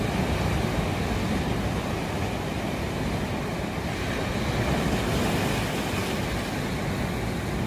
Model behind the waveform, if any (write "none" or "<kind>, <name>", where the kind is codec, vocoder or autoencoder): none